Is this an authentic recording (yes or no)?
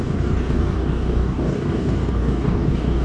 no